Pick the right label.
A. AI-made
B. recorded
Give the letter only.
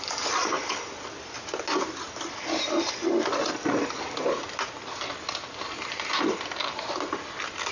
B